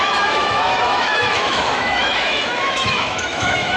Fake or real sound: fake